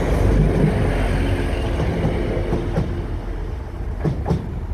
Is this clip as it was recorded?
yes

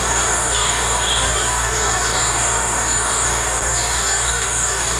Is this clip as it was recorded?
no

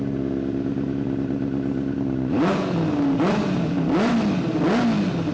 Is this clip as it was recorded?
yes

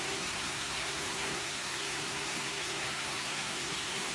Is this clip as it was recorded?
no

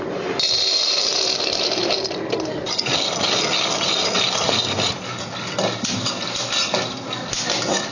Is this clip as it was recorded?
yes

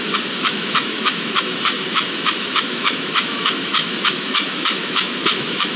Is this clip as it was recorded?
no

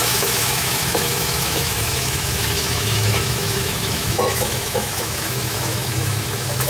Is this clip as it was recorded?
no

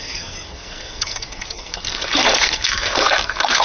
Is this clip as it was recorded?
no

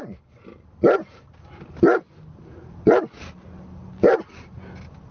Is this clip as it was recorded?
yes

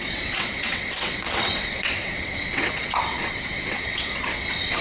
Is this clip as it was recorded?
no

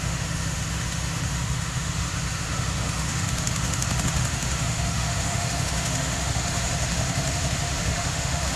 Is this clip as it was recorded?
no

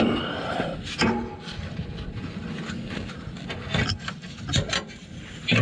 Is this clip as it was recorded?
yes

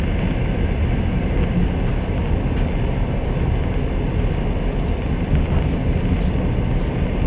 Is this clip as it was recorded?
yes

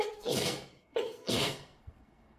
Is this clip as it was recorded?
no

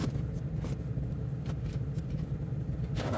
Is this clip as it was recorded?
yes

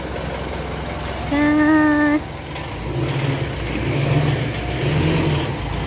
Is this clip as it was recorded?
yes